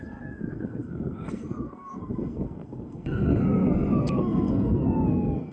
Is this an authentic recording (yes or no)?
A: no